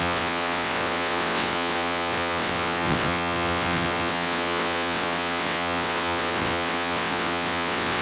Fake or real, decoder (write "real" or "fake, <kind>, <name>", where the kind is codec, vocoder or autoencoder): fake, vocoder, WaveNeXt